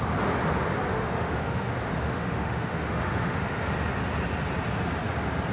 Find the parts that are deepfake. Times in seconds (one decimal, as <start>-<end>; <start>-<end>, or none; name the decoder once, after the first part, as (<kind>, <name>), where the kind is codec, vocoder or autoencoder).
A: 0.9-3.7 (autoencoder, DAC-VAE)